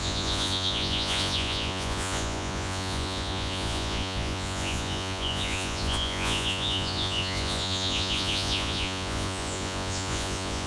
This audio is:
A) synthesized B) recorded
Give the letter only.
A